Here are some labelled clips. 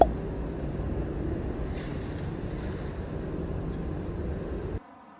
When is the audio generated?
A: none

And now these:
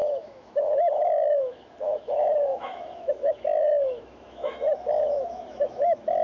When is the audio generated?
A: 0.0-6.2 (autoencoder, DAC-VAE)

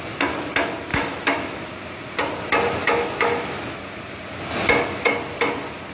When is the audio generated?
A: 0.9-1.7 (autoencoder, DAC-VAE); 2.8-3.8

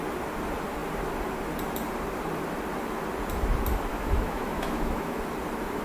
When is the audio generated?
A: 3.9-5.2 (autoencoder, DAC-VAE)